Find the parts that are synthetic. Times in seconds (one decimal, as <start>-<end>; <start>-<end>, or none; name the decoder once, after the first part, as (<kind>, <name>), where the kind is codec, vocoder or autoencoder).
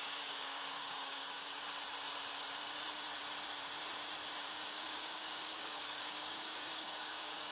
0.0-1.5 (codec, DAC); 4.5-7.5